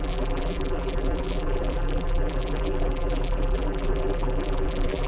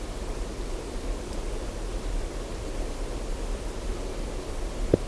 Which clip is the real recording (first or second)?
second